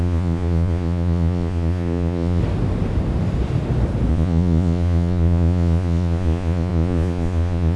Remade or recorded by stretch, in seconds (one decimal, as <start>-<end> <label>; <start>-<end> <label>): 0.0-2.4 remade; 2.4-4.1 recorded; 4.1-7.8 remade